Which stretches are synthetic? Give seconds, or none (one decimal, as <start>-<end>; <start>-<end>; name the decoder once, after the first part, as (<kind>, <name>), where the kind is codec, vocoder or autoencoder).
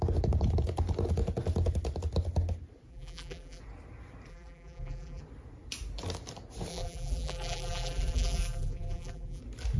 2.9-3.6 (vocoder, BigVGAN v2); 4.3-5.2; 6.7-9.4